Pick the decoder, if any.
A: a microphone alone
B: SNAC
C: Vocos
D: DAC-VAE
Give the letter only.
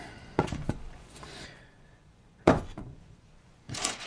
C